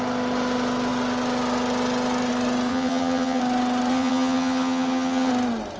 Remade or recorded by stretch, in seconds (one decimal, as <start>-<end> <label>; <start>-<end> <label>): 0.0-2.7 recorded; 2.7-3.4 remade; 3.4-3.9 recorded; 3.9-5.3 remade; 5.3-5.8 recorded